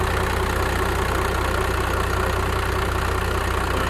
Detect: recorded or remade recorded